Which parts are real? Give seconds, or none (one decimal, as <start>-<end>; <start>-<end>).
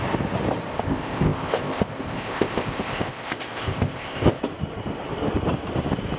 0.0-0.7; 4.4-6.2